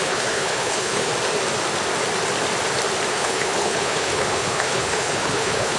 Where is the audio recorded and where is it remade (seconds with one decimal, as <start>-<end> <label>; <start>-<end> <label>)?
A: 0.0-1.1 remade; 1.1-3.1 recorded; 3.1-5.8 remade